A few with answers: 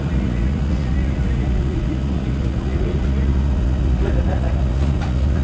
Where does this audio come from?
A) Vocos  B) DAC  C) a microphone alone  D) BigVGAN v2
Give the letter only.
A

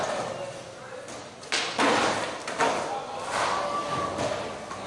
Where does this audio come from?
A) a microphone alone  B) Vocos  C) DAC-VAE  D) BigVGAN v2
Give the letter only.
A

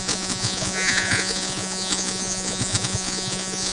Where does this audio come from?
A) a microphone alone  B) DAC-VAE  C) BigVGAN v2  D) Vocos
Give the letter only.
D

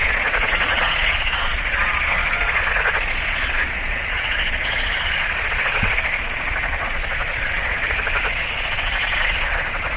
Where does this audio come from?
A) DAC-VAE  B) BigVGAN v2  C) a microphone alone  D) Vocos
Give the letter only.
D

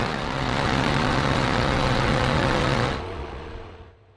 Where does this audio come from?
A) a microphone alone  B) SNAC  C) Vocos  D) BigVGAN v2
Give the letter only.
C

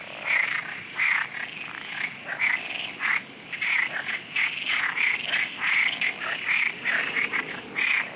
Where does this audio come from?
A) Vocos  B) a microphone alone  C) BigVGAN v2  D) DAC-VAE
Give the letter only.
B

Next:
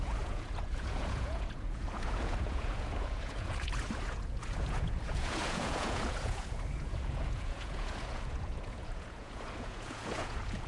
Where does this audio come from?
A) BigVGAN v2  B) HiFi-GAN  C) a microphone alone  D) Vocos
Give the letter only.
D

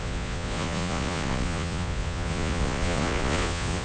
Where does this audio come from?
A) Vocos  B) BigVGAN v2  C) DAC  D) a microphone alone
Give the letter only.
A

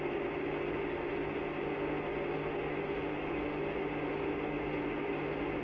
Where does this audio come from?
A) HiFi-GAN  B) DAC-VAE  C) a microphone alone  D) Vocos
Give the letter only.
C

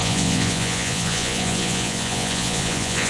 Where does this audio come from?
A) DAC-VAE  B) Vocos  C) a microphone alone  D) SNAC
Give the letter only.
B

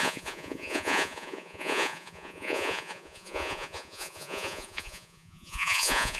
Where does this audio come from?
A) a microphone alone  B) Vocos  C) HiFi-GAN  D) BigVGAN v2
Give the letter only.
B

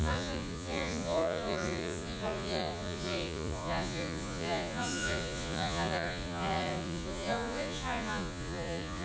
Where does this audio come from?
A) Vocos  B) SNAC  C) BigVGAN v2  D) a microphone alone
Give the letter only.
A